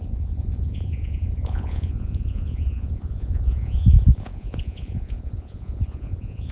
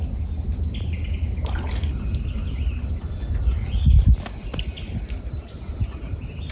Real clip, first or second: second